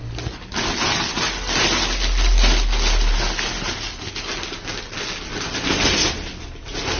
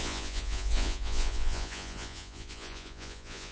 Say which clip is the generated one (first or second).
second